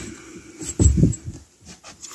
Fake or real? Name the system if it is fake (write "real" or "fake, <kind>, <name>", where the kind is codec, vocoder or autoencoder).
real